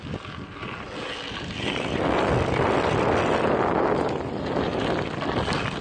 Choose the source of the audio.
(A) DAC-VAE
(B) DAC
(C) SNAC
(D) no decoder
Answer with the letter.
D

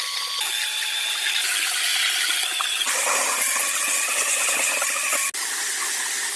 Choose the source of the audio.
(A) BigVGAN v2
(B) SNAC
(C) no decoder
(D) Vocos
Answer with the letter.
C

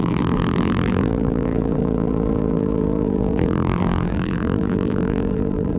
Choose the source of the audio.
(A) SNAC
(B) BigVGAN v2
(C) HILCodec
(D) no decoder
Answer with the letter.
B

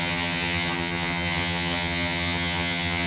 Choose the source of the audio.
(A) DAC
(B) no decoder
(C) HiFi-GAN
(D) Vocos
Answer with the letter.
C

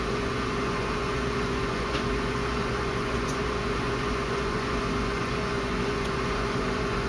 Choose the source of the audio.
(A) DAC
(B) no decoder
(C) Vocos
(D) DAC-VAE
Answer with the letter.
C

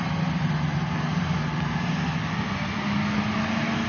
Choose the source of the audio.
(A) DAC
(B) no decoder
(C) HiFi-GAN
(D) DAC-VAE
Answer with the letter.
B